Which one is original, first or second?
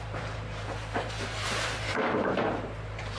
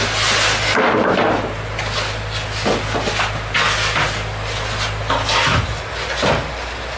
second